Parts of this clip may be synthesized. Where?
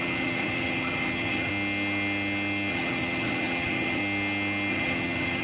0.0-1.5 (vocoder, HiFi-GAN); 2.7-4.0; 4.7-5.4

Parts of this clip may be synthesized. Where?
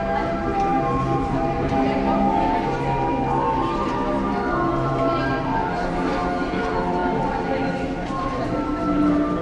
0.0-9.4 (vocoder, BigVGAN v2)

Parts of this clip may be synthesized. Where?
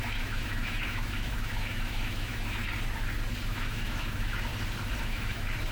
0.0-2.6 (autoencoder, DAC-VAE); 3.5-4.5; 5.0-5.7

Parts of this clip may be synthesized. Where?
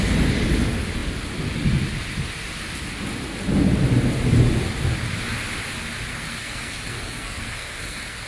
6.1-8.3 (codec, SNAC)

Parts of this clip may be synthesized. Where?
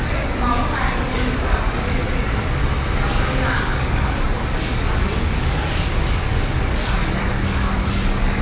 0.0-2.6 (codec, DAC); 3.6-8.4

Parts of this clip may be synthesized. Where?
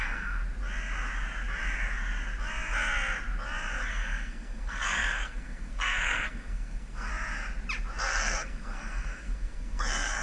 0.0-0.4 (codec, SNAC); 3.9-7.1; 8.0-10.2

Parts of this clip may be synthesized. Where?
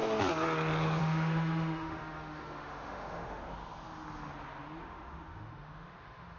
1.0-3.4 (autoencoder, DAC-VAE); 4.8-6.4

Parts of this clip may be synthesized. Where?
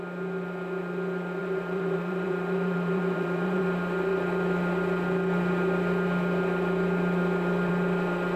1.4-3.6 (vocoder, BigVGAN v2)